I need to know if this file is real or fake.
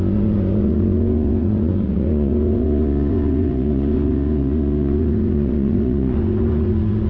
fake